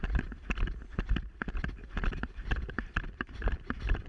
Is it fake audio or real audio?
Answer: fake